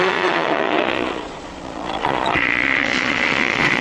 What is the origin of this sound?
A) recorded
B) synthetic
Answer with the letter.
B